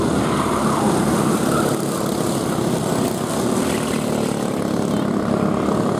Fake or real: real